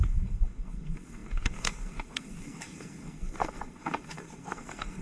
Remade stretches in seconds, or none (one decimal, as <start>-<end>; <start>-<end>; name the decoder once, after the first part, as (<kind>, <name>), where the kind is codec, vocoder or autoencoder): 0.0-5.0 (codec, SNAC)